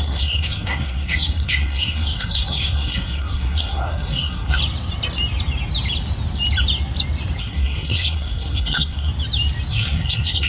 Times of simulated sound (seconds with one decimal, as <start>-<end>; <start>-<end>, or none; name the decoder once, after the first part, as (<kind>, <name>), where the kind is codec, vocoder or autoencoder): 0.0-4.6 (codec, SNAC); 7.4-9.1; 9.7-10.5